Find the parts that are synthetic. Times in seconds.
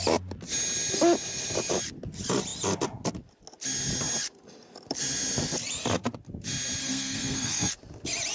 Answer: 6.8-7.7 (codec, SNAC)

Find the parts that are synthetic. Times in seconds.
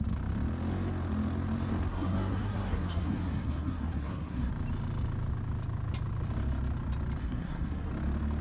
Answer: 1.9-4.5 (codec, SNAC); 7.2-7.9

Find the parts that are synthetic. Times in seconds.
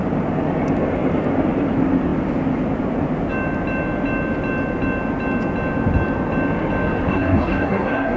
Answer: 7.1-8.2 (codec, SNAC)